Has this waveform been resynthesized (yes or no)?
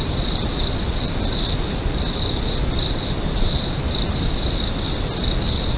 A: yes